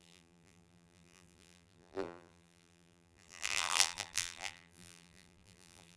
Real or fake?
fake